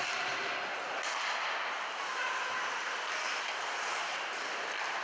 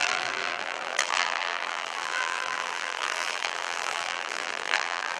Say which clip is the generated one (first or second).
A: second